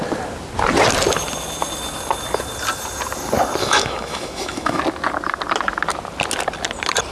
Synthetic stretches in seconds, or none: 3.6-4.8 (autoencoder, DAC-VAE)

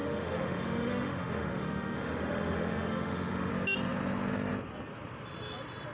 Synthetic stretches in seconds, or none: 0.0-3.5 (autoencoder, DAC-VAE)

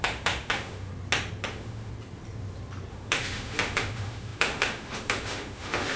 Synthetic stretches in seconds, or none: 0.0-0.9 (autoencoder, DAC-VAE); 1.5-1.9; 2.9-6.0

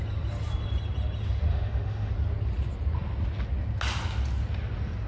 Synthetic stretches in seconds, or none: 1.5-2.1 (autoencoder, DAC-VAE)

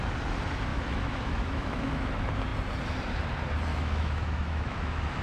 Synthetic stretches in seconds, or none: 0.7-2.1 (autoencoder, DAC-VAE); 3.7-5.2